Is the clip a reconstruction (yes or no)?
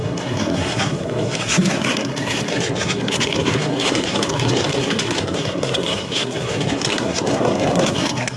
yes